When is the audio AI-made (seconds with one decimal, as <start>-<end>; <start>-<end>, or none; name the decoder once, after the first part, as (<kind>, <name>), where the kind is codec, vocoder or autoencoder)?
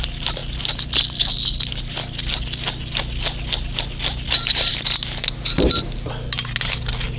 none